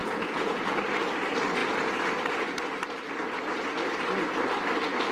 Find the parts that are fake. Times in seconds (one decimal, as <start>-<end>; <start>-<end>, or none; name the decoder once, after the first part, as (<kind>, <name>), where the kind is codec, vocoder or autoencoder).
0.0-0.8 (vocoder, Vocos)